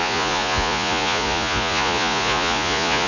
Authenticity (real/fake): fake